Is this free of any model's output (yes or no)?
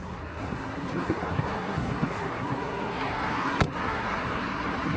no